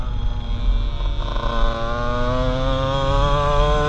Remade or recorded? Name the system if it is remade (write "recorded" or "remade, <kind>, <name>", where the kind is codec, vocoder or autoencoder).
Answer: recorded